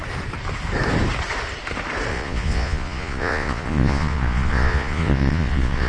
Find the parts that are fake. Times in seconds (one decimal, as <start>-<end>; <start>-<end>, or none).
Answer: 2.1-5.9